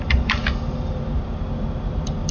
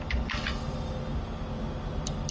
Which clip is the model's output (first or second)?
first